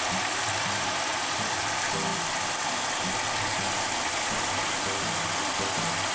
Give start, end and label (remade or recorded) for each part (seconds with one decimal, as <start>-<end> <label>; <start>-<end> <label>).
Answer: 0.0-1.1 recorded; 1.1-1.7 remade; 1.7-6.1 recorded